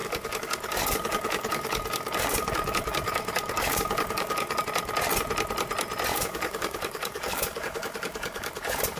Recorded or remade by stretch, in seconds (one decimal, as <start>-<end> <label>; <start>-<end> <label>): 0.0-4.6 remade; 4.6-6.1 recorded; 6.1-9.0 remade